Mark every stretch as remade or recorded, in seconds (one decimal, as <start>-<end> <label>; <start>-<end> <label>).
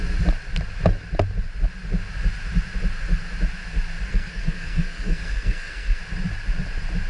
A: 0.0-4.1 recorded; 4.1-6.0 remade; 6.0-7.1 recorded